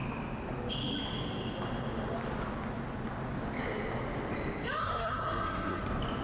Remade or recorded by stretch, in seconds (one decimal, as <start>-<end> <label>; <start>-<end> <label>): 0.0-4.8 recorded; 4.8-5.8 remade; 5.8-6.2 recorded